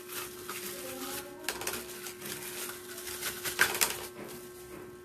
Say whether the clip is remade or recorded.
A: recorded